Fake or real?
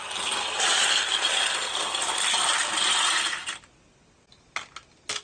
real